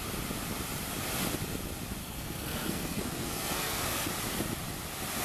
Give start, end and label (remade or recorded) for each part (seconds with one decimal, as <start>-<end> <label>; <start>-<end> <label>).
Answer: 0.0-2.0 recorded; 2.0-4.1 remade; 4.1-5.2 recorded